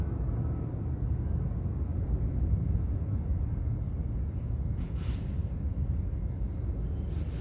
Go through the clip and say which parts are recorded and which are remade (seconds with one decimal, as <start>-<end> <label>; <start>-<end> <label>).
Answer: 0.0-1.9 recorded; 1.9-2.4 remade; 2.4-5.4 recorded; 5.4-5.9 remade; 5.9-7.4 recorded